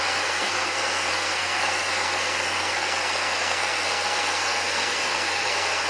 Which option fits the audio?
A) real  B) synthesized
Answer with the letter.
B